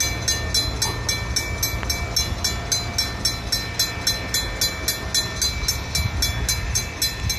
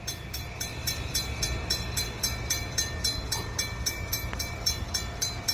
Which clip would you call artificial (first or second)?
second